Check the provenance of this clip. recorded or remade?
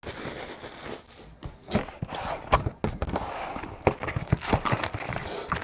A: recorded